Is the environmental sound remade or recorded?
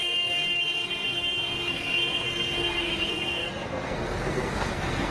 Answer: remade